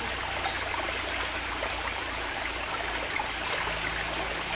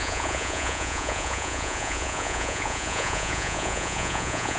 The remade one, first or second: second